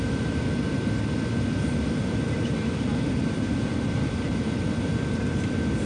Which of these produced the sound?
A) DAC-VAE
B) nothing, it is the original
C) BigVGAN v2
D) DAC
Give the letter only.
C